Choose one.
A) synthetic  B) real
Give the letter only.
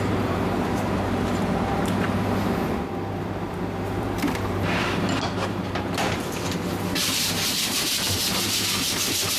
A